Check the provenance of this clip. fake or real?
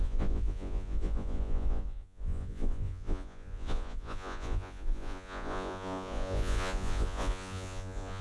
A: fake